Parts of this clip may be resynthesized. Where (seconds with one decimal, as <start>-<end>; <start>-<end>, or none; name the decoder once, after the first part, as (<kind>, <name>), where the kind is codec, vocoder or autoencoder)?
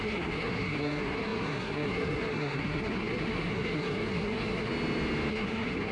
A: 0.0-4.7 (codec, SNAC); 5.3-5.9